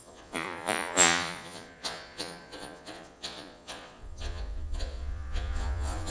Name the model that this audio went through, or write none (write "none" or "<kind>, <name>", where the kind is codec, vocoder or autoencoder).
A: vocoder, Vocos